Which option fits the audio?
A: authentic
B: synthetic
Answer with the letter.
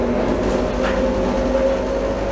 A